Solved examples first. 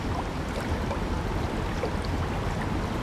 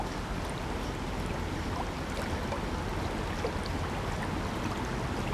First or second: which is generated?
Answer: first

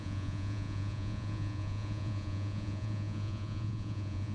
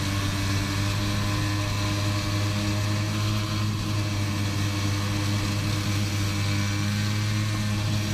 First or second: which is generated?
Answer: first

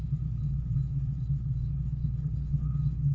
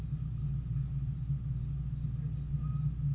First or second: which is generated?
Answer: first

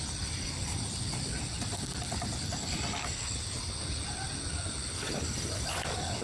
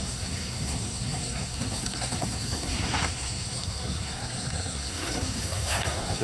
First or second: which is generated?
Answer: second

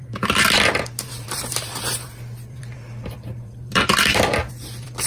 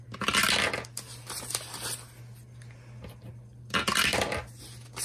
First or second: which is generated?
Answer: first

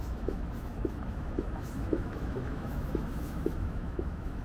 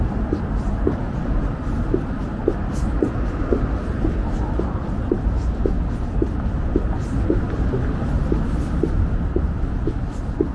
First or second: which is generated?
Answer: first